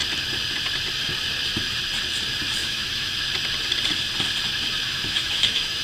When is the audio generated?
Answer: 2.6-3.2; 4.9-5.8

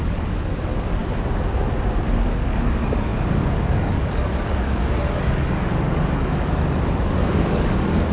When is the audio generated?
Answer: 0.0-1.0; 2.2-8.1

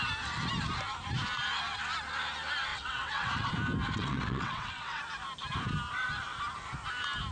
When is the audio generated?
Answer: 2.7-3.5; 3.9-5.0

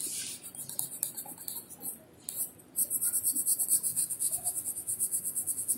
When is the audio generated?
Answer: 3.9-5.8

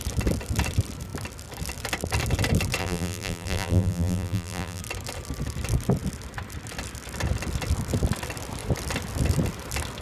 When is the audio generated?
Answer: 2.8-4.8

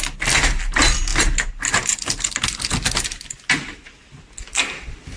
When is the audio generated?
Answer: none